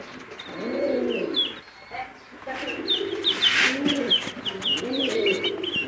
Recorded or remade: recorded